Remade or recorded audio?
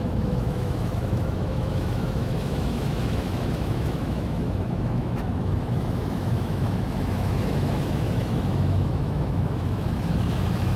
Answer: remade